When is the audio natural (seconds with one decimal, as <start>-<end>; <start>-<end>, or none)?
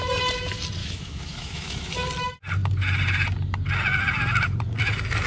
0.0-0.8; 1.9-5.3